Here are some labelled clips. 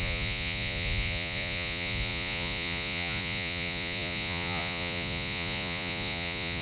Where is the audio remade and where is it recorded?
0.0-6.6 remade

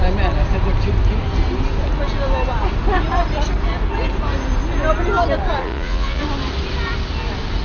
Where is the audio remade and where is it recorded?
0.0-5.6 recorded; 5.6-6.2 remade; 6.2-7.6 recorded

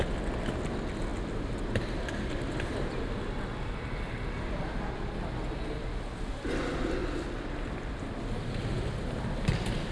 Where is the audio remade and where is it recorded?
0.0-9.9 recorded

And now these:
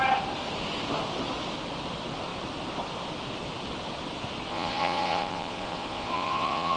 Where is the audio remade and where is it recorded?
0.0-4.5 recorded; 4.5-6.8 remade

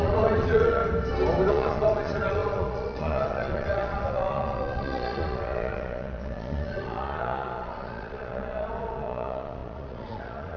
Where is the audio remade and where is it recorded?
0.0-0.8 remade; 0.8-1.5 recorded; 1.5-10.6 remade

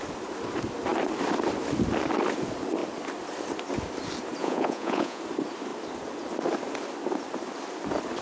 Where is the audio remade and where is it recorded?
0.0-4.4 recorded; 4.4-5.2 remade; 5.2-8.2 recorded

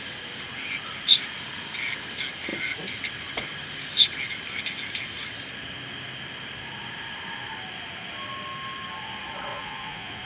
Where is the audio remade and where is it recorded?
0.0-9.5 recorded; 9.5-10.2 remade

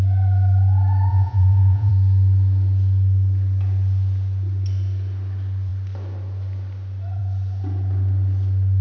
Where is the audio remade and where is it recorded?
0.0-1.1 recorded; 1.1-1.9 remade; 1.9-8.8 recorded